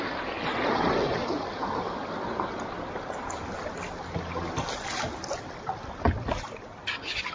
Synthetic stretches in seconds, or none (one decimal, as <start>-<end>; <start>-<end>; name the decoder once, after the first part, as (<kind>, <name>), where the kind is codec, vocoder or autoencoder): none